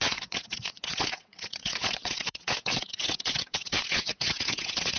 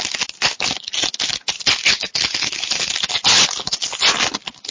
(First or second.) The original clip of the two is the second